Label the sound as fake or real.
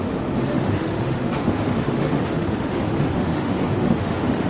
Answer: fake